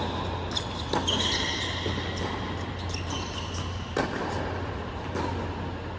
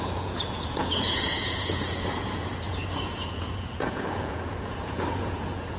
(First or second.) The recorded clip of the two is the first